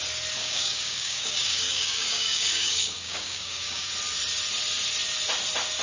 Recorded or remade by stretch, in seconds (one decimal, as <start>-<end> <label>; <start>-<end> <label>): 0.0-0.4 recorded; 0.4-3.9 remade; 3.9-5.8 recorded